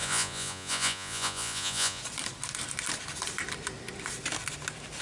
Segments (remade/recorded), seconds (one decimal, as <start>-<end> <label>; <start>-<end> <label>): 0.0-2.0 remade; 2.0-5.0 recorded